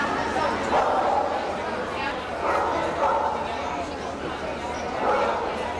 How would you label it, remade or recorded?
recorded